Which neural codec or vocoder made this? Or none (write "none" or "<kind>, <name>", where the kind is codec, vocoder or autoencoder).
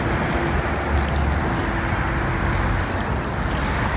none